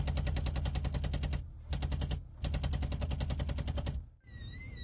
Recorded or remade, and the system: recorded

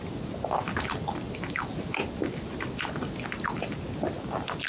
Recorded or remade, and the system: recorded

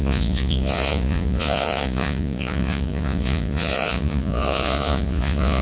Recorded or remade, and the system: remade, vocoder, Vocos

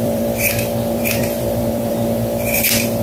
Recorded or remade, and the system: remade, vocoder, BigVGAN v2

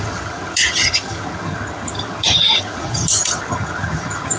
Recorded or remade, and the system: remade, vocoder, HiFi-GAN